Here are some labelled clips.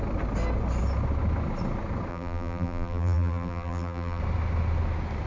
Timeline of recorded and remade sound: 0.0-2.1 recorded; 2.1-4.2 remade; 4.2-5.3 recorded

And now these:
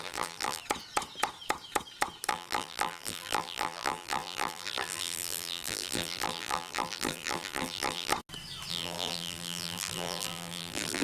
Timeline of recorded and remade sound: 0.0-0.6 remade; 0.6-2.3 recorded; 2.3-8.1 remade; 8.1-8.7 recorded; 8.7-11.0 remade